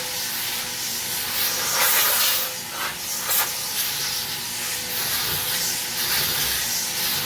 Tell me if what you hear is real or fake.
real